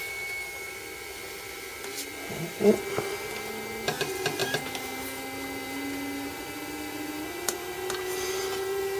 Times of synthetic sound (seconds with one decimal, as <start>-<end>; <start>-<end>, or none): none